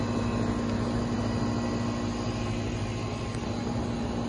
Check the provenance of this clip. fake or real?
real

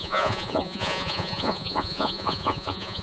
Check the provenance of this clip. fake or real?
fake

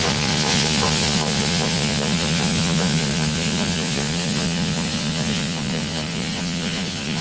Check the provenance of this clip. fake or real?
fake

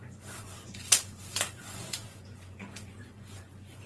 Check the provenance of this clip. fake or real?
fake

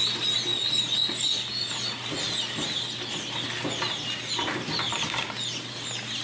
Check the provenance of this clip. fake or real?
real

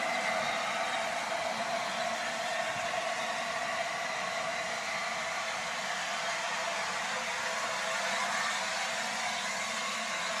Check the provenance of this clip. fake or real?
real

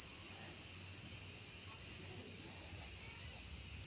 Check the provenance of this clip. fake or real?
fake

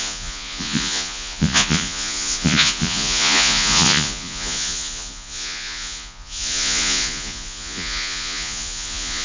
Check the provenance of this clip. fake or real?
fake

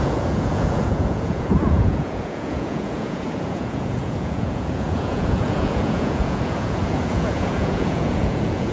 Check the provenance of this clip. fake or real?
fake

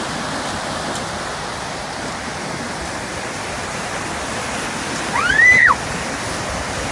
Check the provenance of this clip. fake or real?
real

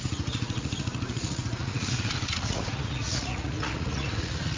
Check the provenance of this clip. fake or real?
fake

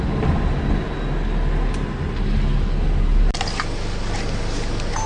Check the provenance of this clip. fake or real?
real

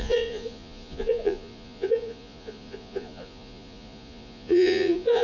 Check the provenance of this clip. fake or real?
fake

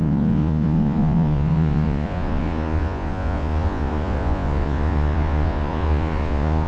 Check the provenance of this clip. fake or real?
fake